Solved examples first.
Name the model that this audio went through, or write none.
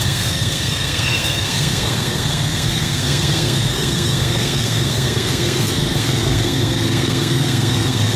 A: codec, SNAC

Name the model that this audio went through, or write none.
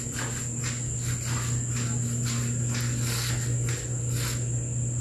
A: none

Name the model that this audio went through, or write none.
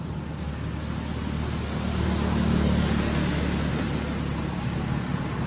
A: none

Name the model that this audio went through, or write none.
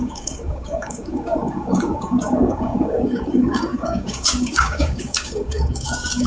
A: codec, DAC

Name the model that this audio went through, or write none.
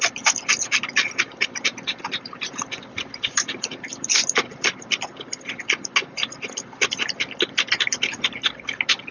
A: none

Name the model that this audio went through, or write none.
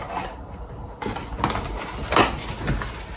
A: none